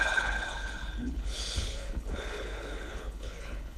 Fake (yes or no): yes